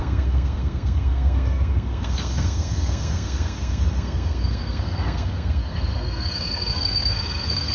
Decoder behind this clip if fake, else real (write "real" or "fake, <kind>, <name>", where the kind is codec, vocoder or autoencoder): fake, codec, SNAC